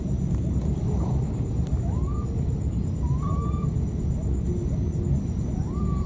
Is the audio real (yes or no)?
yes